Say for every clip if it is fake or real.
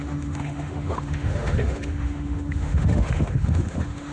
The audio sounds fake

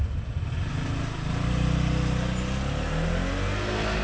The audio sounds real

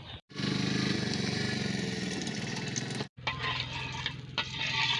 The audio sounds fake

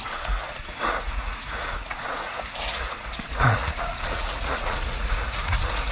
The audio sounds fake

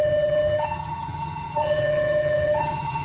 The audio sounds fake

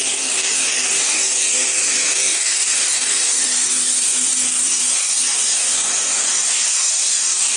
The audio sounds fake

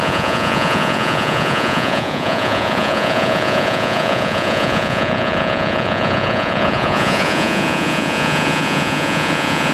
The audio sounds fake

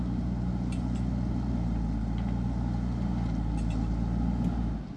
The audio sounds real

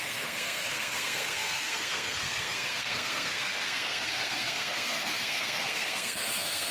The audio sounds fake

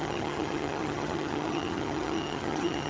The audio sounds fake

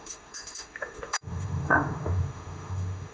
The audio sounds fake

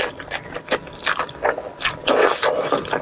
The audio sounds real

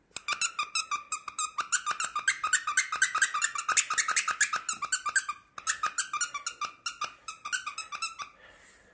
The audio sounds real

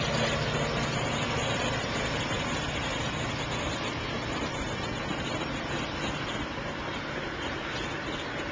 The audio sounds real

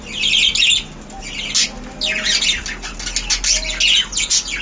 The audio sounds real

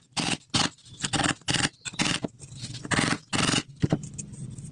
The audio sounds fake